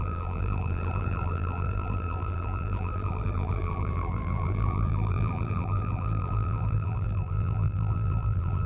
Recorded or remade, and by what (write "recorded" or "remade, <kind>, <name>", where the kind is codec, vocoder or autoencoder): remade, vocoder, BigVGAN v2